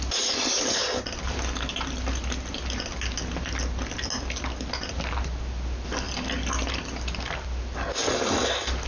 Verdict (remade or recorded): recorded